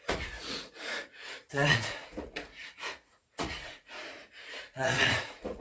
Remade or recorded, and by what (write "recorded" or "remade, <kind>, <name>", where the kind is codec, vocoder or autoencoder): remade, vocoder, Vocos